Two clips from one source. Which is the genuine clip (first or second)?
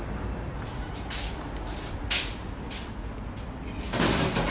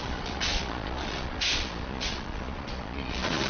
first